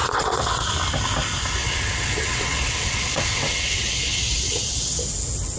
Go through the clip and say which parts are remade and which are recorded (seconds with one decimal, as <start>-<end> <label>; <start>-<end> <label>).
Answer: 0.0-0.7 remade; 0.7-1.6 recorded; 1.6-5.0 remade; 5.0-5.6 recorded